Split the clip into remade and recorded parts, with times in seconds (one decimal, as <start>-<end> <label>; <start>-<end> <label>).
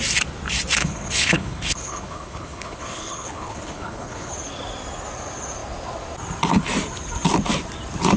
0.0-0.8 recorded; 0.8-4.3 remade; 4.3-8.2 recorded